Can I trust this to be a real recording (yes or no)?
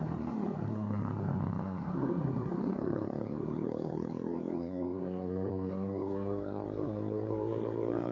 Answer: no